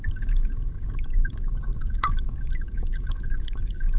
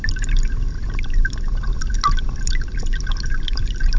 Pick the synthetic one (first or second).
first